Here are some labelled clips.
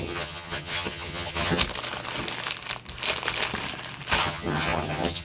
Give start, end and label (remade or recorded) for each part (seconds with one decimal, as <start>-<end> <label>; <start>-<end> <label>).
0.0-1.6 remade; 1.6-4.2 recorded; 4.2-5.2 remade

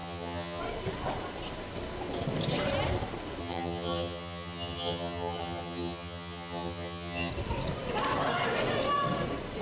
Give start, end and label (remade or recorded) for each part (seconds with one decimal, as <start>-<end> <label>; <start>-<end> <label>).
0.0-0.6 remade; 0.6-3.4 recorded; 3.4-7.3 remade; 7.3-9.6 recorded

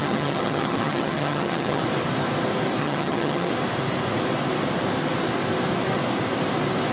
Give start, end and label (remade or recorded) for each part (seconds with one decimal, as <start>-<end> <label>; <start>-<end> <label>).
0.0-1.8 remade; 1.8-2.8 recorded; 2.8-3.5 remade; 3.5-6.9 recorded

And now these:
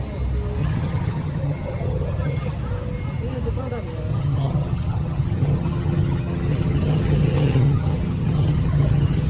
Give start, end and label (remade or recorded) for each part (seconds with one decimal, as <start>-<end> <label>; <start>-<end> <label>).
0.0-0.6 recorded; 0.6-2.5 remade; 2.5-4.1 recorded; 4.1-9.3 remade

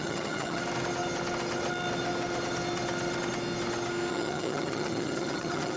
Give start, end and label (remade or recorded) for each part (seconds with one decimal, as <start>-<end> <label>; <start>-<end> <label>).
0.0-0.6 remade; 0.6-4.1 recorded; 4.1-5.8 remade

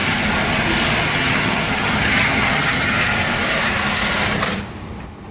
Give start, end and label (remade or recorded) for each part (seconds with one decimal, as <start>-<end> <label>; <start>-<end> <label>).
0.0-1.0 recorded; 1.0-3.0 remade; 3.0-5.3 recorded

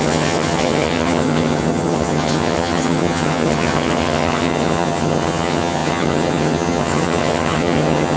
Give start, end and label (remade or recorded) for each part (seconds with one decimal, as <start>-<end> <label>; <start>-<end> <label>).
0.0-8.2 remade